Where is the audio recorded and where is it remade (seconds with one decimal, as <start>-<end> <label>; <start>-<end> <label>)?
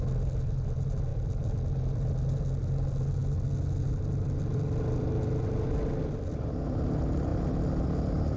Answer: 0.0-8.4 recorded